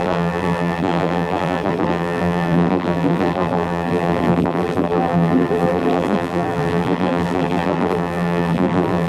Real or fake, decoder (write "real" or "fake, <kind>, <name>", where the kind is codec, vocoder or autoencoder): fake, vocoder, BigVGAN v2